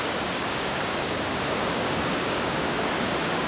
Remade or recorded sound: remade